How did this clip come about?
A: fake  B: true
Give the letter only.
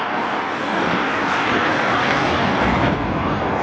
A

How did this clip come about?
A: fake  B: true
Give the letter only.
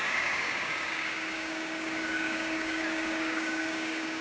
A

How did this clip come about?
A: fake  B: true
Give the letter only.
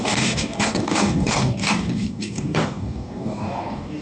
A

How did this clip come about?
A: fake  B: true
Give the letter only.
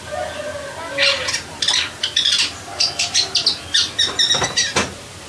B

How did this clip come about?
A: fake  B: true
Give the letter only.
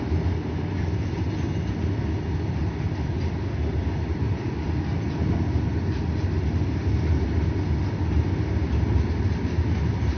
B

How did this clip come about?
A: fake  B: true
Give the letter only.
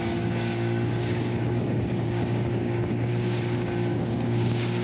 A